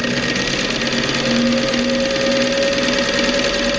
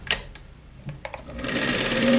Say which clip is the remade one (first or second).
second